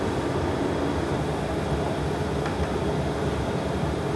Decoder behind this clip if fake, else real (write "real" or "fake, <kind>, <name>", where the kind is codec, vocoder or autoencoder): real